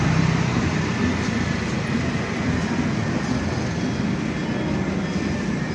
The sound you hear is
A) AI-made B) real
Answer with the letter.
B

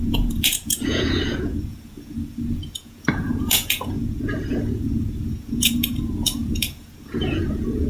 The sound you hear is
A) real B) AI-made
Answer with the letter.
B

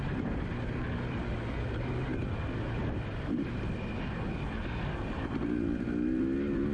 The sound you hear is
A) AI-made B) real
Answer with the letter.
B